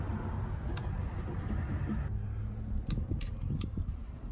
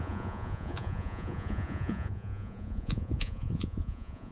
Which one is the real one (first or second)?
first